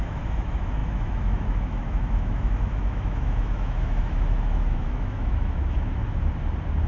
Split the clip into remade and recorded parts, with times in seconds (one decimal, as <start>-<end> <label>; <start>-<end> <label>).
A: 0.0-6.0 remade; 6.0-6.9 recorded